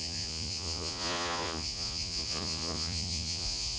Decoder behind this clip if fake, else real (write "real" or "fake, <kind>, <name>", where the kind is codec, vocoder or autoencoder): fake, vocoder, Vocos